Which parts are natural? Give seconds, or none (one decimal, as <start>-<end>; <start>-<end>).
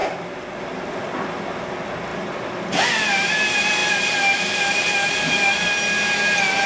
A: 0.0-6.7